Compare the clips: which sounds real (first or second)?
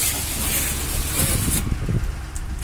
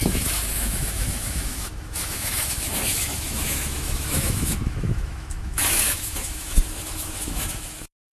first